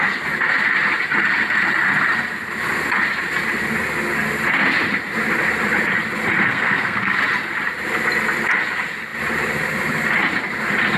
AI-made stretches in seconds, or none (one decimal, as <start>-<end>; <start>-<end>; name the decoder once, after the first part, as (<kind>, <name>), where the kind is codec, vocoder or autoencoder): 6.5-7.2 (codec, SNAC)